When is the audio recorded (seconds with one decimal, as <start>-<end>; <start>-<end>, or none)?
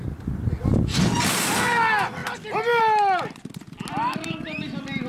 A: 0.0-5.1